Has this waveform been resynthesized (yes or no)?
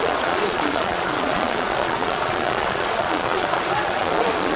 yes